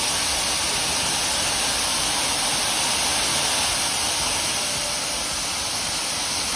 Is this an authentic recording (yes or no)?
yes